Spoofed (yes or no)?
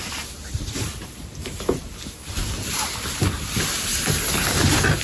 no